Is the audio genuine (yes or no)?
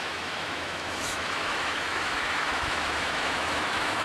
no